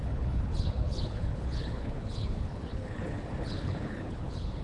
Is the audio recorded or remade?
remade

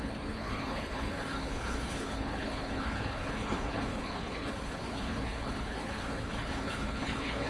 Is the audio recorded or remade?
remade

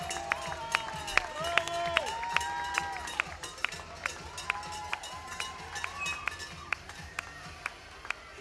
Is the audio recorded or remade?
recorded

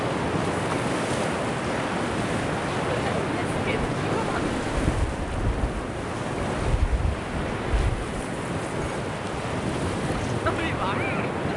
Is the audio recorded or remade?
recorded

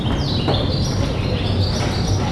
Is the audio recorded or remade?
recorded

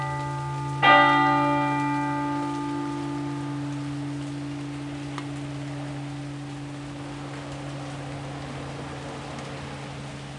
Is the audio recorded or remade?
recorded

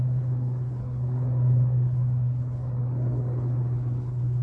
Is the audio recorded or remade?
remade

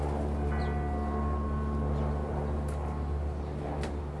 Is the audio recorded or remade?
recorded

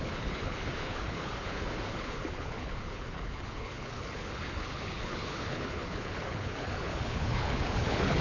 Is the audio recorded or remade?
remade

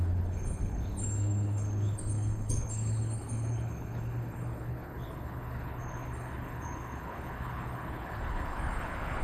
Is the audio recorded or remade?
remade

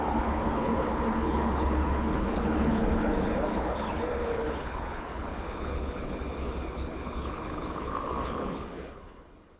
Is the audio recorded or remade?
remade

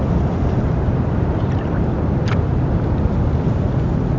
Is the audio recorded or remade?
recorded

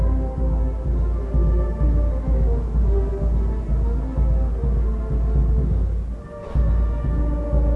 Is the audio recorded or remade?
recorded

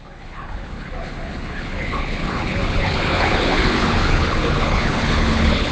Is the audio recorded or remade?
remade